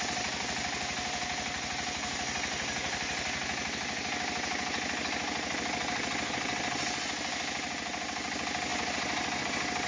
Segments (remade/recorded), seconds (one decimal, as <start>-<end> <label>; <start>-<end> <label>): 0.0-9.9 recorded